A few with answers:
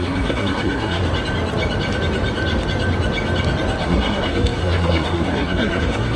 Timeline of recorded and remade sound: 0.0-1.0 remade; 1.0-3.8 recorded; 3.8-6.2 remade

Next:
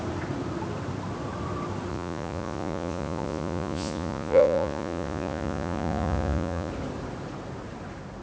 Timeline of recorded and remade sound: 0.0-1.9 recorded; 1.9-6.7 remade; 6.7-8.2 recorded

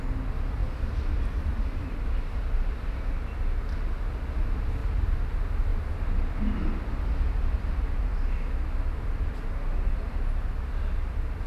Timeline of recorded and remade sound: 0.0-11.5 recorded